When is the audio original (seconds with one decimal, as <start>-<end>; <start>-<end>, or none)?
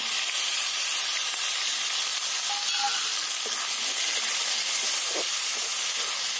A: 0.0-6.4